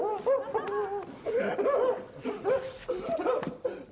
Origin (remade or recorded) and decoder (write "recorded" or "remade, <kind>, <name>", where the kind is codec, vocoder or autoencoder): recorded